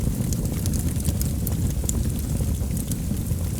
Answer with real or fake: real